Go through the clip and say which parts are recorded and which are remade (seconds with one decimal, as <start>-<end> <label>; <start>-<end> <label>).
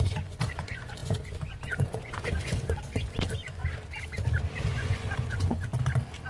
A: 0.0-3.6 remade; 3.6-4.6 recorded; 4.6-5.7 remade; 5.7-6.3 recorded